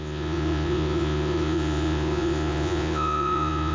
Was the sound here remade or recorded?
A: remade